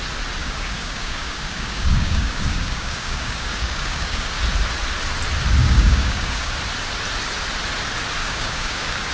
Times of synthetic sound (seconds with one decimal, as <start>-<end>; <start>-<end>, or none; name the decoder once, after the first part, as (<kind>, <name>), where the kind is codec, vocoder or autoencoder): 0.4-4.4 (codec, DAC); 5.6-6.5; 8.2-9.1